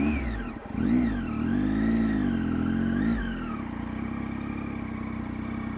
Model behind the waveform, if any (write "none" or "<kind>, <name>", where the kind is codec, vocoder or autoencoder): none